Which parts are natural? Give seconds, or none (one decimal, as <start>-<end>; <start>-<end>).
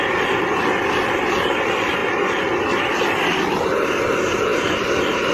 0.0-5.3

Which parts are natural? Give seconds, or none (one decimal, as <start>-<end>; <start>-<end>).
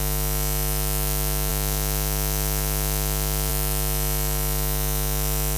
none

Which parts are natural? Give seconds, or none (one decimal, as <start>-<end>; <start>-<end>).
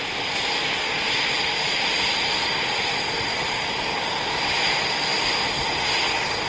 0.0-6.5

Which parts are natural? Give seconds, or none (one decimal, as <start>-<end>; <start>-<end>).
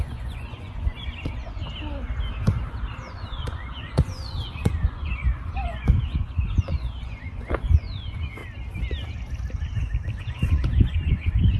1.6-3.1; 8.4-10.2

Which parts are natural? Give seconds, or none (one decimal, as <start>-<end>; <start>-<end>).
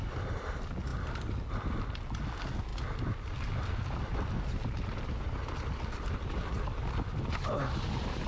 0.0-8.3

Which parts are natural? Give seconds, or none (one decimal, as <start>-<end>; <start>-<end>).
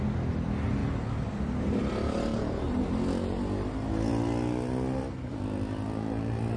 0.0-2.3; 2.8-6.6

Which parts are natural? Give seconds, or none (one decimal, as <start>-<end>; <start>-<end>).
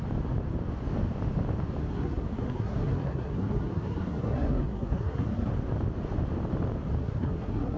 0.0-1.8; 5.5-7.0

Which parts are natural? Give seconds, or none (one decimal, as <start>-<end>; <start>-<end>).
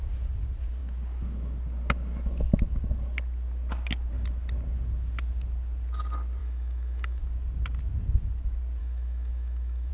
0.0-6.4; 7.2-8.8